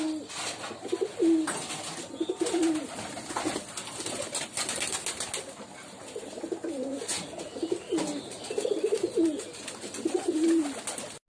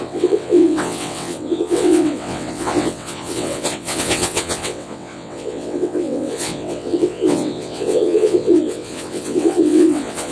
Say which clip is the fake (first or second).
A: second